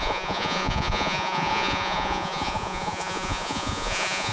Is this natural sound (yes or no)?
no